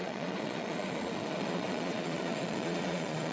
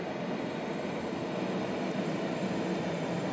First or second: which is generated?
first